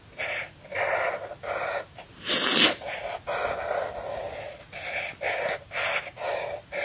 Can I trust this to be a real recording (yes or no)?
yes